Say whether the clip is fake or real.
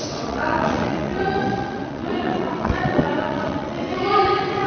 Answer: fake